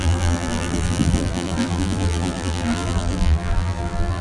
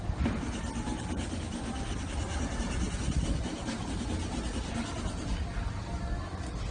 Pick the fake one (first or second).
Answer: first